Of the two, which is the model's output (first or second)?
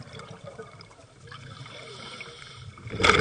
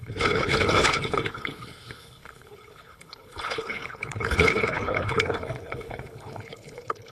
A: second